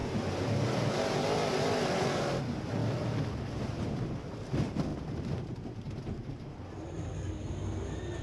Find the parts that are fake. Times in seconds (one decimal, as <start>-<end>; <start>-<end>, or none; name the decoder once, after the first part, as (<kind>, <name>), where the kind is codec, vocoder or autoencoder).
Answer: none